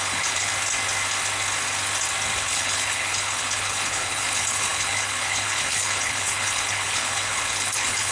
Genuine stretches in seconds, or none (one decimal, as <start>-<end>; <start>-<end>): 0.5-2.5